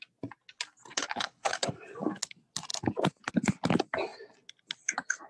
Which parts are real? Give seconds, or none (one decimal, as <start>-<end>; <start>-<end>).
0.0-0.9; 1.7-5.3